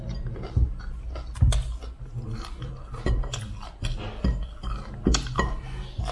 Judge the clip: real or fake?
real